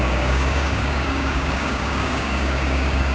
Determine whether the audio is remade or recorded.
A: remade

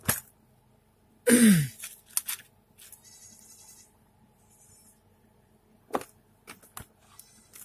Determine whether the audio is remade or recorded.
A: recorded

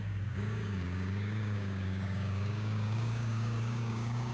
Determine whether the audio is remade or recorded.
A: remade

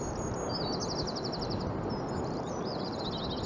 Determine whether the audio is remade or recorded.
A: recorded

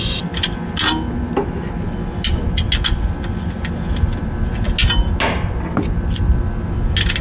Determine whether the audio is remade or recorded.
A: recorded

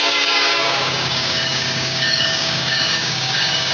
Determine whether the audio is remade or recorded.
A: remade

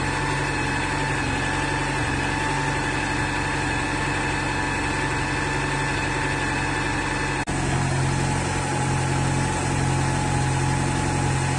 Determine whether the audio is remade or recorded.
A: recorded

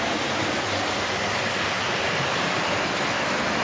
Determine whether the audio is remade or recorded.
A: recorded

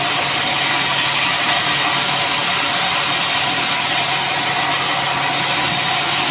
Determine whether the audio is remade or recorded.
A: recorded